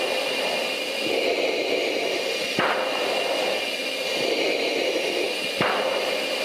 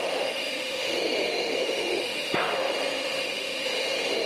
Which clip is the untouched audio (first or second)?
first